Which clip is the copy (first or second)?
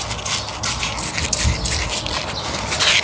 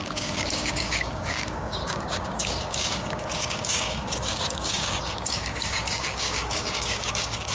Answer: second